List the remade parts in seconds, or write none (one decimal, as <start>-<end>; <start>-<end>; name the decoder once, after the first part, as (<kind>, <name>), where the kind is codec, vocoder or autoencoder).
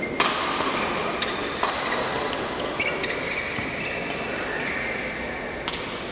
none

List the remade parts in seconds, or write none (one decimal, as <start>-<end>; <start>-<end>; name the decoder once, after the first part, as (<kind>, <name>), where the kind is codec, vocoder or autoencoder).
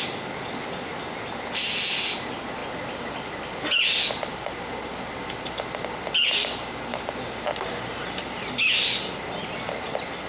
6.9-8.5 (vocoder, BigVGAN v2)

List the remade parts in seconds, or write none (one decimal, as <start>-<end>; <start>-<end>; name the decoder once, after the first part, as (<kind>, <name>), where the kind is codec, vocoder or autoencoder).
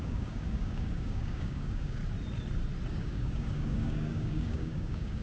0.0-2.0 (codec, DAC); 2.9-5.2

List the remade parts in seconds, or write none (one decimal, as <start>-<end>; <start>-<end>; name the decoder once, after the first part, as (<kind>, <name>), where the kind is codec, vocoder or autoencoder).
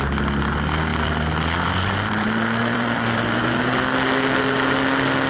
0.9-3.6 (vocoder, BigVGAN v2)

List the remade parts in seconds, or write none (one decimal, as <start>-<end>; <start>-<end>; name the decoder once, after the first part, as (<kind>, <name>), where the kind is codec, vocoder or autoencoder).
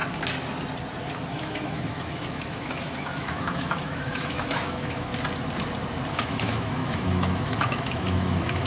1.3-5.1 (autoencoder, DAC-VAE); 6.1-8.7